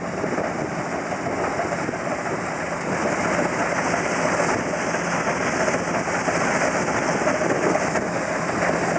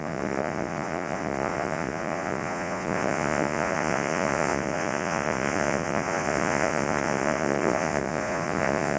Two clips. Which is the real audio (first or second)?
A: first